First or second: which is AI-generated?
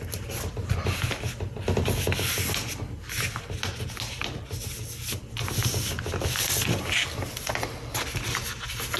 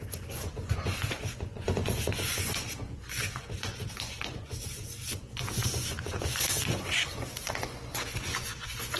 second